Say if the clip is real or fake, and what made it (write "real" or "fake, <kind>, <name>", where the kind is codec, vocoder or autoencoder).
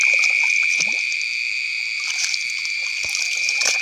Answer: fake, vocoder, BigVGAN v2